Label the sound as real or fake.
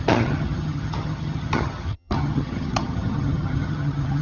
fake